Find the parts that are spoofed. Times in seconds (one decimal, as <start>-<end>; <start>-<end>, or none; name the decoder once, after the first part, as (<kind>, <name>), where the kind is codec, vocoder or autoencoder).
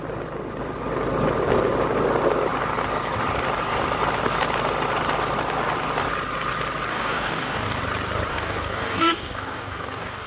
6.9-7.8 (codec, DAC); 8.3-10.3